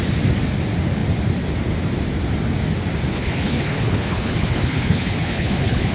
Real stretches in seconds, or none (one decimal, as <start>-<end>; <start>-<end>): 0.0-3.1